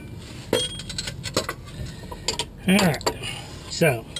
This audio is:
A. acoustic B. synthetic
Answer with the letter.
A